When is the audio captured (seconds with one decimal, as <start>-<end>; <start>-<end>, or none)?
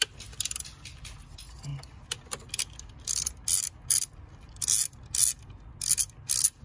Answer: 0.0-6.6